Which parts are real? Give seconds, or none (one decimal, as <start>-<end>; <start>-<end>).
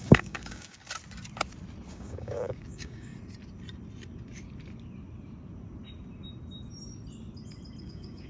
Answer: 0.8-1.9; 3.1-7.8